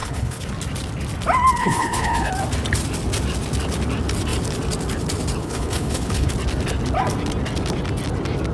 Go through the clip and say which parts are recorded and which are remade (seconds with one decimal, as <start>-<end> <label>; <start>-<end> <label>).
0.0-0.5 remade; 0.5-1.6 recorded; 1.6-2.3 remade; 2.3-5.4 recorded; 5.4-6.3 remade; 6.3-8.5 recorded

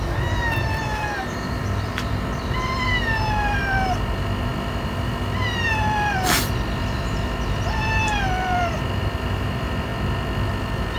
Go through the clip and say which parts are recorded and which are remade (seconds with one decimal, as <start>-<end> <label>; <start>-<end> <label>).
0.0-9.9 remade; 9.9-10.5 recorded; 10.5-11.0 remade

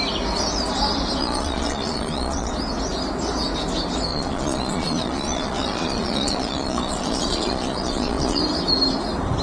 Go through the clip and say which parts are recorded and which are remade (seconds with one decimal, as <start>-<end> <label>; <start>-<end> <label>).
0.0-1.2 recorded; 1.2-2.5 remade; 2.5-4.1 recorded; 4.1-8.4 remade; 8.4-9.4 recorded

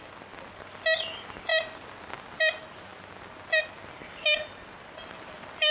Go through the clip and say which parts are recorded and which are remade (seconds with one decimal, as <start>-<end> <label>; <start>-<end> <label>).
0.0-5.7 recorded

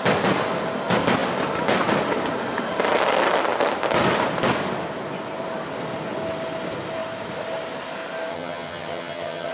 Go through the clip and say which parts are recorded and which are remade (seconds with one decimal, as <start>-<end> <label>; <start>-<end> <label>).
0.0-8.3 recorded; 8.3-9.5 remade

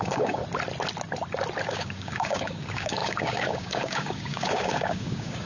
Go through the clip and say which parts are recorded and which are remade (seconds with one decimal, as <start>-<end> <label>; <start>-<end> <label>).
0.0-0.4 remade; 0.4-1.7 recorded; 1.7-5.5 remade